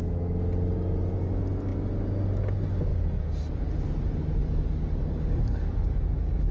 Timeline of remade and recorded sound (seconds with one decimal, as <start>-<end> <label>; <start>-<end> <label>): 0.0-4.4 recorded; 4.4-6.5 remade